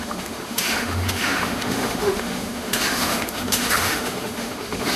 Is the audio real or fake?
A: fake